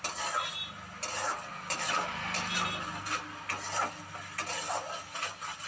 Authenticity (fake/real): real